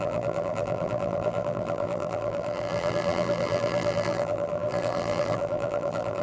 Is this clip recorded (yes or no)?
no